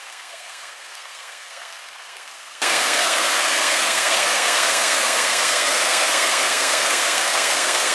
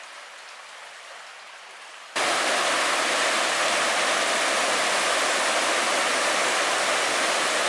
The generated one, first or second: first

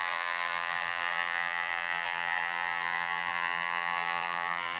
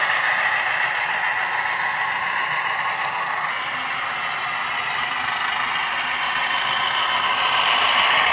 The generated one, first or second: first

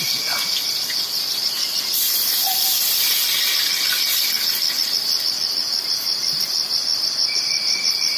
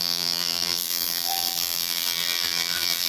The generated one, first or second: second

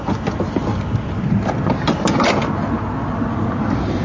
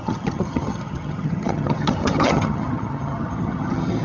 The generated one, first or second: second